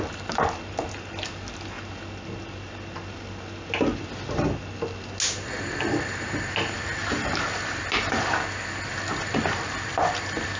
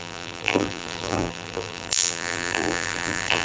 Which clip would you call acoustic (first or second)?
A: first